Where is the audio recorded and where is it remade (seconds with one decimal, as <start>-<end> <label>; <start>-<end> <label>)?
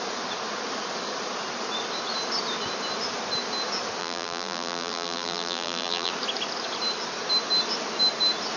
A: 0.0-4.0 recorded; 4.0-6.1 remade; 6.1-8.6 recorded